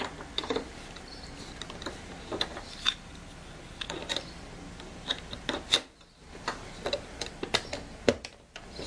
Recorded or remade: recorded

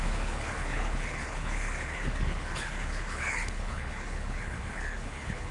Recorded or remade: remade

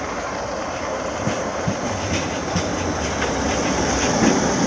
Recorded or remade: recorded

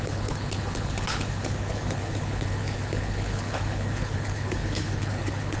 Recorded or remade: remade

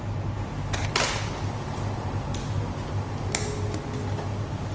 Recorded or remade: recorded